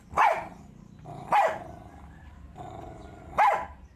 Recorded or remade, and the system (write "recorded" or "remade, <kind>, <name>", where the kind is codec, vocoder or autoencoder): remade, vocoder, BigVGAN v2